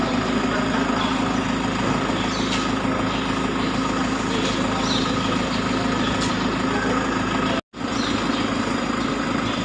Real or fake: real